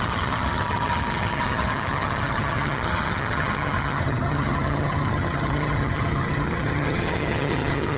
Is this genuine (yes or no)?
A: no